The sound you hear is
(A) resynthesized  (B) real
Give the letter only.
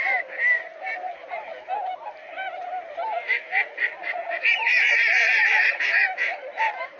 A